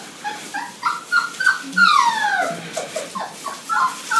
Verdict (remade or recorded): recorded